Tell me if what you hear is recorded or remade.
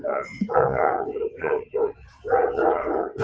remade